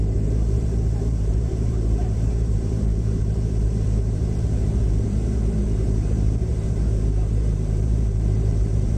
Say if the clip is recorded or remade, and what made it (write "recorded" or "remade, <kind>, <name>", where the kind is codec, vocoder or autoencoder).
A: remade, vocoder, BigVGAN v2